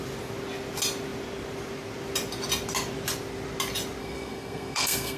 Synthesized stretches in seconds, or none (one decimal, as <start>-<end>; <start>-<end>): 4.0-5.2